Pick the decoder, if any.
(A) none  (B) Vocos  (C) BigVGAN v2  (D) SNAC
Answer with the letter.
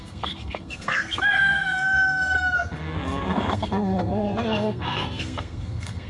D